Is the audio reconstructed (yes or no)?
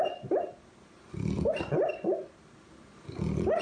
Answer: no